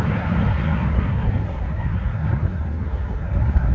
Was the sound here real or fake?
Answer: fake